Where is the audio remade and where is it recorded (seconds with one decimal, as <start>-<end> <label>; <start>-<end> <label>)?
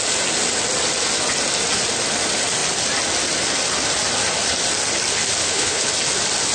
0.0-5.4 recorded; 5.4-5.9 remade; 5.9-6.5 recorded